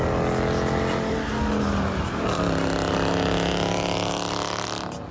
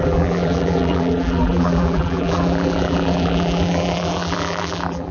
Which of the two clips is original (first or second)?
first